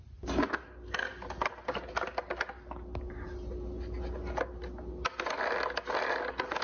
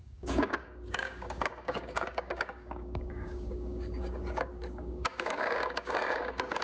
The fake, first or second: second